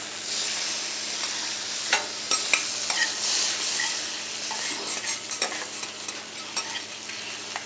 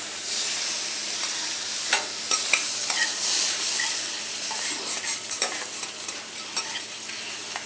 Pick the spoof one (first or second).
second